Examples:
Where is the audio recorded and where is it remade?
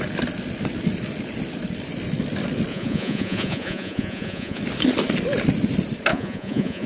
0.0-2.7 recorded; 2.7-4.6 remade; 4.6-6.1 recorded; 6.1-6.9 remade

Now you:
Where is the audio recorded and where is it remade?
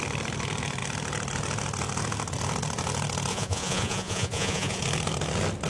0.0-3.3 recorded; 3.3-4.8 remade; 4.8-5.7 recorded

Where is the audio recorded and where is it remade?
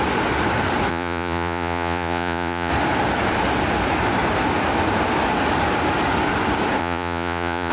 0.0-0.9 recorded; 0.9-2.7 remade; 2.7-6.8 recorded; 6.8-7.7 remade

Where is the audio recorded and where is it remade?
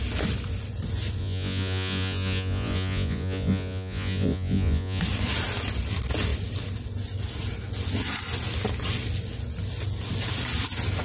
0.0-1.2 recorded; 1.2-5.0 remade; 5.0-11.0 recorded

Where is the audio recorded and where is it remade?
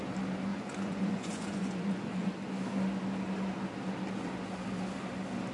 0.0-0.5 recorded; 0.5-2.3 remade; 2.3-5.5 recorded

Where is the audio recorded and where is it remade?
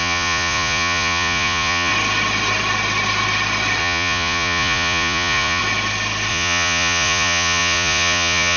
0.0-1.9 remade; 1.9-3.8 recorded; 3.8-5.6 remade; 5.6-6.3 recorded; 6.3-8.6 remade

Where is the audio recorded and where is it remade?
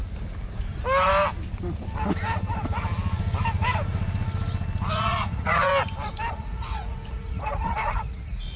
0.0-4.9 recorded; 4.9-5.7 remade; 5.7-6.3 recorded; 6.3-8.6 remade